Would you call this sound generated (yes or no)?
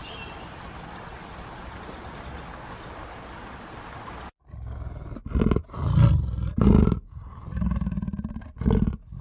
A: no